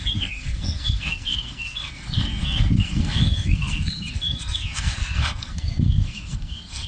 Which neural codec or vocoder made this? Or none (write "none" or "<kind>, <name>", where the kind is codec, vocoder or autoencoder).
codec, SNAC